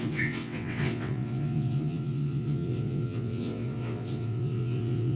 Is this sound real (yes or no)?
no